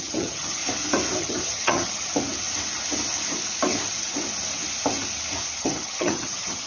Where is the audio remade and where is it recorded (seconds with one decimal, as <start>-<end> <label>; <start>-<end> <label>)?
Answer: 0.0-0.6 remade; 0.6-1.2 recorded; 1.2-2.1 remade; 2.1-5.6 recorded; 5.6-6.7 remade